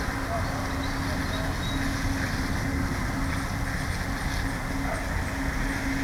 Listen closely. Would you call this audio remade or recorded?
recorded